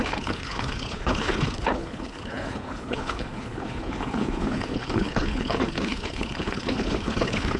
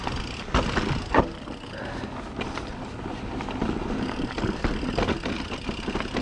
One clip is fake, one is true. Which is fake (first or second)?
first